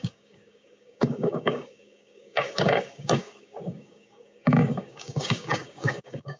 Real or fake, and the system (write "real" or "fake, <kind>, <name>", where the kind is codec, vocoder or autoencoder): fake, codec, DAC